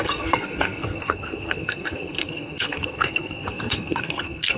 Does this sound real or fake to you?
fake